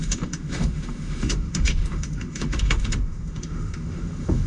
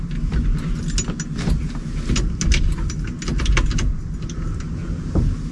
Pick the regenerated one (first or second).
first